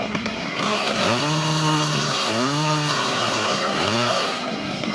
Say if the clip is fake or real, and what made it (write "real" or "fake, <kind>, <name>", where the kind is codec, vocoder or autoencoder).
fake, codec, SNAC